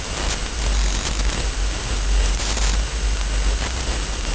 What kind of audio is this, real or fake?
real